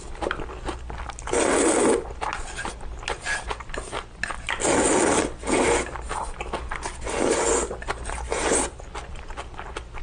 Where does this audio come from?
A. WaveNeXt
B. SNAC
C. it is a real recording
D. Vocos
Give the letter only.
C